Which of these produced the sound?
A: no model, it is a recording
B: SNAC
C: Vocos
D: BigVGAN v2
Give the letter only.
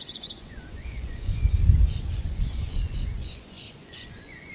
C